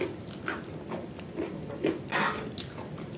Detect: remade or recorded recorded